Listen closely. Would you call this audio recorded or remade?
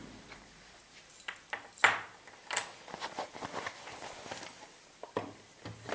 recorded